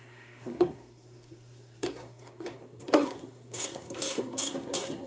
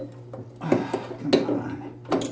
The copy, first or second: first